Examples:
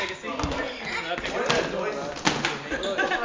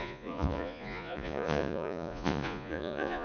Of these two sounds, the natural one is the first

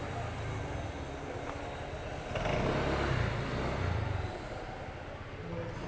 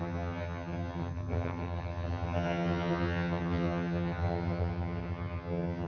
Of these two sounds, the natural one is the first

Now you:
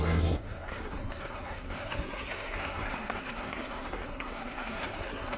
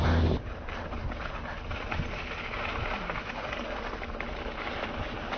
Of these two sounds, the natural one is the second